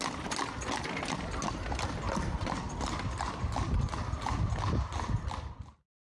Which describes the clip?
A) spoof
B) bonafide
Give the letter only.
B